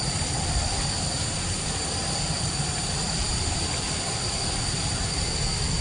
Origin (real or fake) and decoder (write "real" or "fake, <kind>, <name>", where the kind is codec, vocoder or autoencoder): fake, vocoder, BigVGAN v2